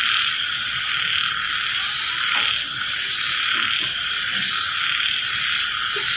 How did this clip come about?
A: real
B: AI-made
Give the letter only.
A